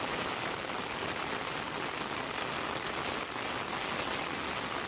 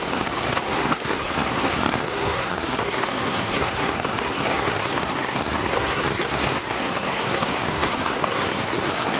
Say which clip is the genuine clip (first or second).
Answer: first